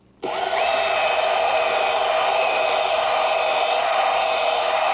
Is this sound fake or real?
real